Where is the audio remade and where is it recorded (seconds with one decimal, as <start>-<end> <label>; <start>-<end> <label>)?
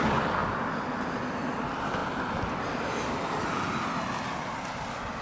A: 0.0-5.2 recorded